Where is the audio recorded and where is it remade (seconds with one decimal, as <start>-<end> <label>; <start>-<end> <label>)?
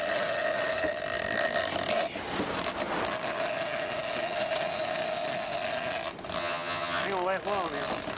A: 0.0-6.4 recorded; 6.4-7.0 remade; 7.0-8.2 recorded